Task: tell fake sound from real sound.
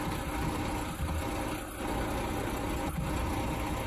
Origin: real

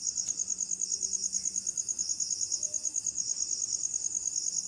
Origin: real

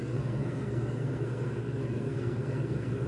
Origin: fake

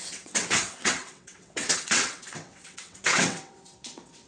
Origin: fake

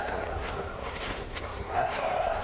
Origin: fake